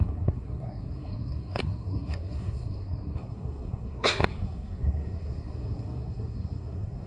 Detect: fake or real fake